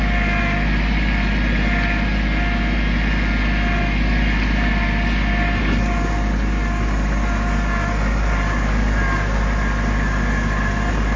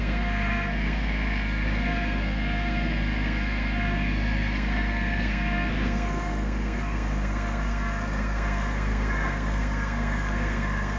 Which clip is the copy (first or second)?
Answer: second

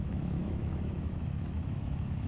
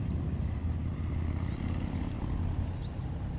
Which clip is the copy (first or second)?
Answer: first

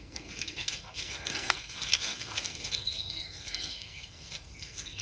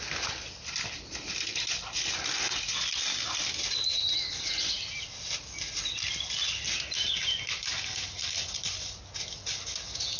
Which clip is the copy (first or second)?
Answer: first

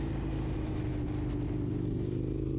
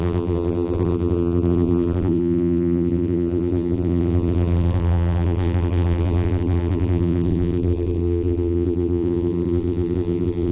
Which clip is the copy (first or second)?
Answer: second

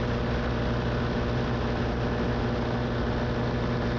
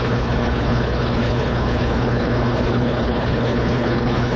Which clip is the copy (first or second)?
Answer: second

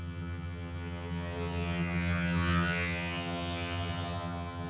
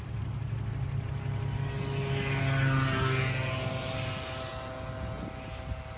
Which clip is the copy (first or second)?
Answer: first